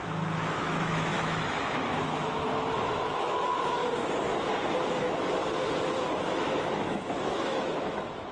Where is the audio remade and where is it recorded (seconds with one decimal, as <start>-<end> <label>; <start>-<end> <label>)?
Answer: 0.0-3.8 remade; 3.8-4.9 recorded; 4.9-5.4 remade; 5.4-6.2 recorded; 6.2-8.3 remade